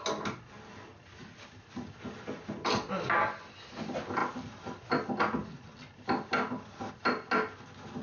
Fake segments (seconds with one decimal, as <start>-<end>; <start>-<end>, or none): none